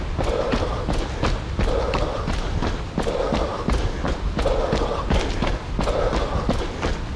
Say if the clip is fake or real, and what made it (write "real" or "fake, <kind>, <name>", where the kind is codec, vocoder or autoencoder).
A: real